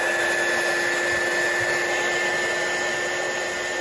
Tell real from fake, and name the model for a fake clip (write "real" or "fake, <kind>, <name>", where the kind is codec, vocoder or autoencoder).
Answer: real